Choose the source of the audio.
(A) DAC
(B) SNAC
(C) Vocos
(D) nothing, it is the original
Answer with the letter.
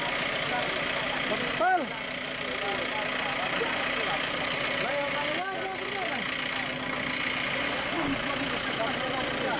D